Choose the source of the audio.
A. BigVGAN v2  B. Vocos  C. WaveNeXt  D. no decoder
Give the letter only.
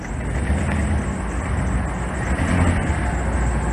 D